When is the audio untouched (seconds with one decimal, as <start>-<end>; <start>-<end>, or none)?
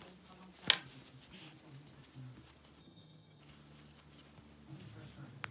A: 0.0-2.8; 3.4-5.5